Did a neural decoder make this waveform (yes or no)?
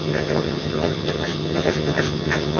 yes